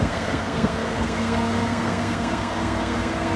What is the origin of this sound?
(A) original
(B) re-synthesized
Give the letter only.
B